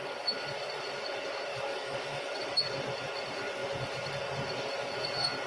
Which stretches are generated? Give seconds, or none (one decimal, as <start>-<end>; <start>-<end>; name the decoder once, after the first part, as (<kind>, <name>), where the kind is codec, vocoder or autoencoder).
1.5-2.6 (autoencoder, DAC-VAE)